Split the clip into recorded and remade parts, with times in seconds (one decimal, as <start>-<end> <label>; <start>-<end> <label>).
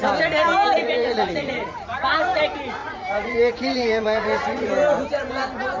0.0-0.8 recorded; 0.8-2.4 remade; 2.4-2.8 recorded; 2.8-4.7 remade; 4.7-5.8 recorded